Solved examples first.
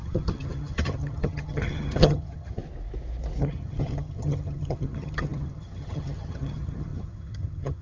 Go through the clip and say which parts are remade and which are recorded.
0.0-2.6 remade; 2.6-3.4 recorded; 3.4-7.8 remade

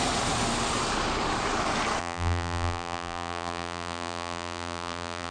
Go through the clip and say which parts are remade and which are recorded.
0.0-2.0 recorded; 2.0-5.3 remade

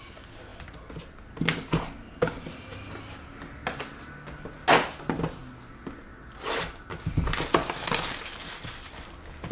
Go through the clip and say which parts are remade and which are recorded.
0.0-9.5 recorded

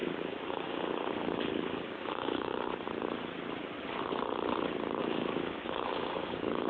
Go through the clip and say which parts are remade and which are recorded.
0.0-2.5 remade; 2.5-5.0 recorded; 5.0-6.7 remade

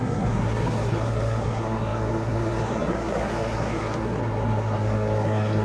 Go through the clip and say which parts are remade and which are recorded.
0.0-5.6 remade

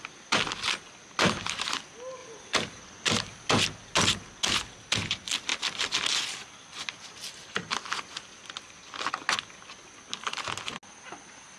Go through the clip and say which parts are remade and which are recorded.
0.0-11.6 recorded